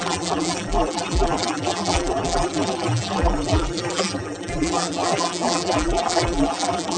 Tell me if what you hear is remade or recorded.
remade